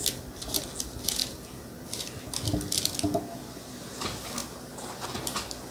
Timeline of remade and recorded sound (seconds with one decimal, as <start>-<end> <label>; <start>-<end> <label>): 0.0-5.7 recorded